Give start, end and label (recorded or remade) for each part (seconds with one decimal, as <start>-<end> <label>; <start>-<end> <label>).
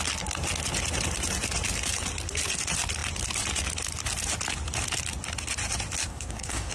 0.0-6.0 recorded; 6.0-6.7 remade